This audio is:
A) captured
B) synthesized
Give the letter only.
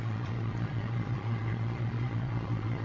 B